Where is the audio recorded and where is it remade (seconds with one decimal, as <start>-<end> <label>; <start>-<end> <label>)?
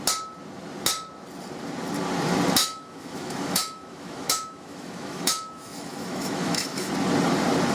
0.0-2.6 recorded; 2.6-6.9 remade; 6.9-7.7 recorded